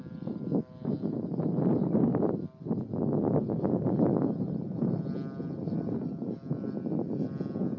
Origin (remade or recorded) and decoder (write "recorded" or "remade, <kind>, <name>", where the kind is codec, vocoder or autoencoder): recorded